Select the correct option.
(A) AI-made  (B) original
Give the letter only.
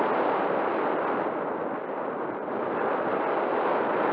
B